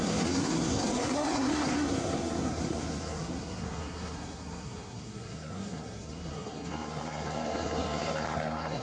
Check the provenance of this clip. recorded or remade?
remade